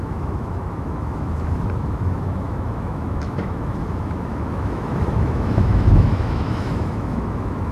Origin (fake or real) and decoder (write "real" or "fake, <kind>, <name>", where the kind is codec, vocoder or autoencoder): fake, autoencoder, DAC-VAE